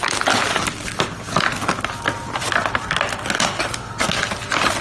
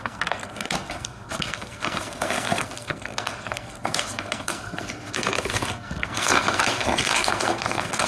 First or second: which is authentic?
first